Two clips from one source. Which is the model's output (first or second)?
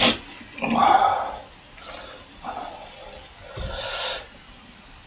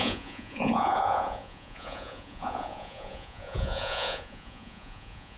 second